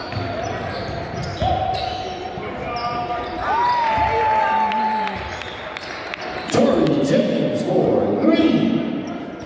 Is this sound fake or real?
real